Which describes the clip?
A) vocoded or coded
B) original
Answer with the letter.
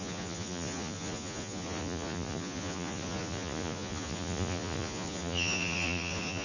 A